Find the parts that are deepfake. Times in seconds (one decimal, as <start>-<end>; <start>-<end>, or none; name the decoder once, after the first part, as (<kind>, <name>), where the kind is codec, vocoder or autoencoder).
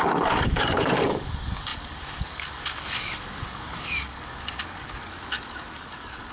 0.0-6.3 (codec, DAC)